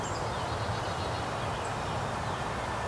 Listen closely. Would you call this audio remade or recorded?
recorded